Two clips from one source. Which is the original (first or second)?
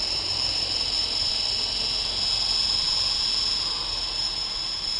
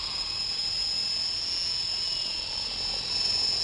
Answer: second